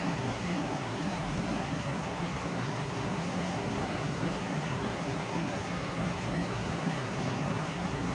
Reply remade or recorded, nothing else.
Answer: remade